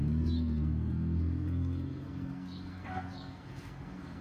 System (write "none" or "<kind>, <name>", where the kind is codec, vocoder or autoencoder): codec, SNAC